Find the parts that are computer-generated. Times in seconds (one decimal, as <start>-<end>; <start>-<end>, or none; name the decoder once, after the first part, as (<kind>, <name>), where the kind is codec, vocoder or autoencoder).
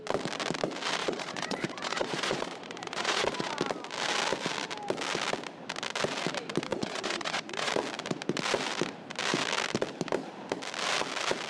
1.0-3.5 (vocoder, Vocos); 6.7-7.7